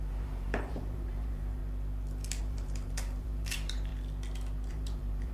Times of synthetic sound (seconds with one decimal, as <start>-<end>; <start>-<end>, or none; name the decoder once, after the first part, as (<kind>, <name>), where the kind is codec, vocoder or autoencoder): 0.0-1.6 (vocoder, BigVGAN v2); 2.4-3.9; 4.7-5.3